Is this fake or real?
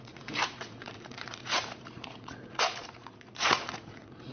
fake